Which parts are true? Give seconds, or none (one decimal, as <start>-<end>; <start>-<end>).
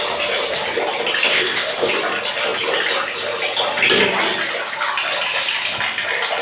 0.0-1.3; 1.9-6.4